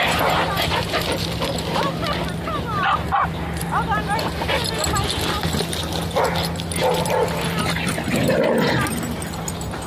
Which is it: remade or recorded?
recorded